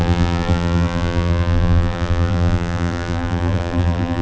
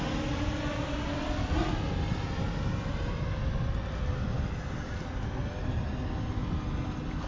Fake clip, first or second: first